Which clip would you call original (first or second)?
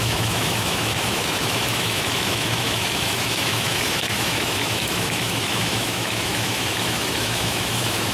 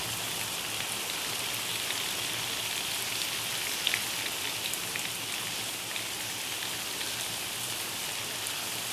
second